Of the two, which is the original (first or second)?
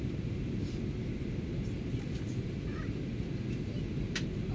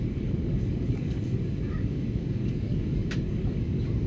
first